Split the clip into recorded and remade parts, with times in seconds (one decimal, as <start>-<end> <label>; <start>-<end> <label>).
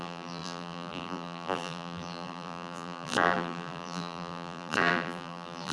0.0-5.7 remade